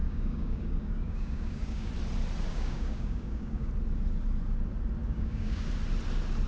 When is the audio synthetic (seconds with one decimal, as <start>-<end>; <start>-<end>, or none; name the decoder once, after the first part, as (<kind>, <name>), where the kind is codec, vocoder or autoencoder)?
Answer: 0.0-1.9 (codec, DAC); 2.5-3.7; 5.0-5.7